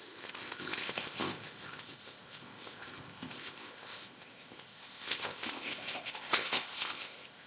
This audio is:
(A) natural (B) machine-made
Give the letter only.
B